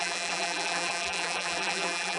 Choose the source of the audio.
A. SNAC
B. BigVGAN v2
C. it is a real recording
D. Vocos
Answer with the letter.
B